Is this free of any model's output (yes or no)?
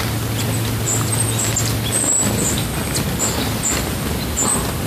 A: yes